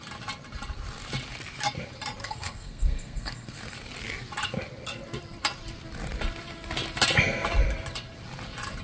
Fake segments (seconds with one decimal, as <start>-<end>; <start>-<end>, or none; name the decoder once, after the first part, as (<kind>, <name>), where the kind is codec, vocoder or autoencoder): 2.2-3.6 (codec, SNAC)